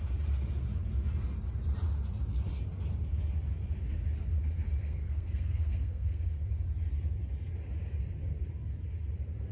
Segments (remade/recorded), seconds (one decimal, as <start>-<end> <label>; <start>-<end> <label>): 0.0-4.8 recorded; 4.8-6.5 remade; 6.5-9.5 recorded